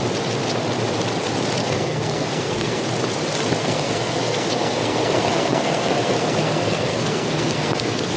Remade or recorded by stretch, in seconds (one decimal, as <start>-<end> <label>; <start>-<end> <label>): 0.0-1.6 recorded; 1.6-2.8 remade; 2.8-3.6 recorded; 3.6-8.2 remade